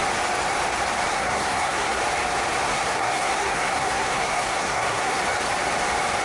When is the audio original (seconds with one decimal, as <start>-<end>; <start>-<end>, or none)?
0.0-1.1; 2.0-2.7; 5.2-6.2